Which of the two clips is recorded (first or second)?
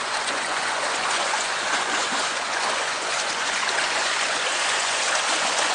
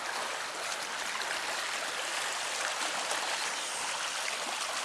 second